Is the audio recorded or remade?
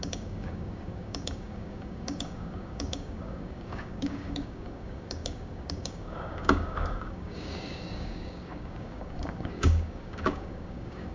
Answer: remade